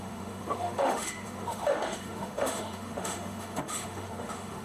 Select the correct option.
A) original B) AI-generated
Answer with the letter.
B